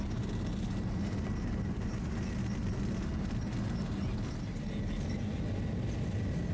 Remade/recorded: recorded